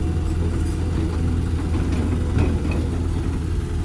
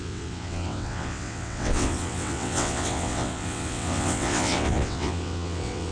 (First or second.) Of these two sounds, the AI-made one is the second